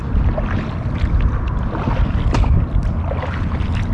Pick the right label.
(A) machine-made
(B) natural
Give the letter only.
B